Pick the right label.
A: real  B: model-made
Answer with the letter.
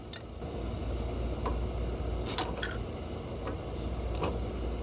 A